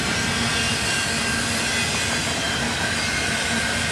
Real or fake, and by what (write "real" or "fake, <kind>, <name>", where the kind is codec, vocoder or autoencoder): real